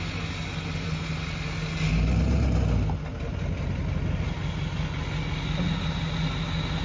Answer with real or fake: real